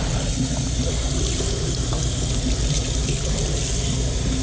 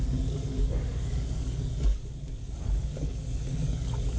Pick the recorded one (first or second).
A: first